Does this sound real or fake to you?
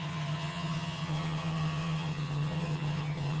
fake